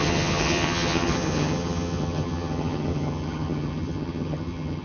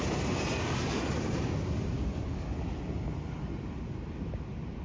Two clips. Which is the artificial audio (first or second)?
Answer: first